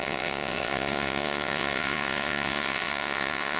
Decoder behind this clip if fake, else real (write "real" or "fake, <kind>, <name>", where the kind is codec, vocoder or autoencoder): fake, vocoder, WaveNeXt